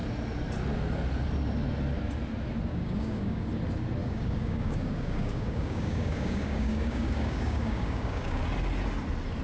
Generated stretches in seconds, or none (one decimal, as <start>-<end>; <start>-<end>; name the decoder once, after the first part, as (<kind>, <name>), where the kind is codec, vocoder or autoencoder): 2.7-3.5 (codec, DAC); 4.0-8.4